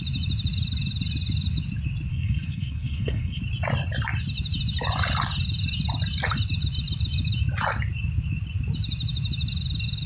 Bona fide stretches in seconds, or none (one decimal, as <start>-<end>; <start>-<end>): 0.0-2.1; 3.4-10.1